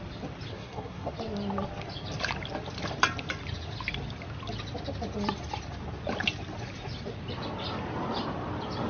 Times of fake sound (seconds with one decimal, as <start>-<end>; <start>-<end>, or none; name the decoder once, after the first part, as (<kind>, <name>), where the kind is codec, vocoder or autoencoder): 0.5-1.1 (codec, SNAC)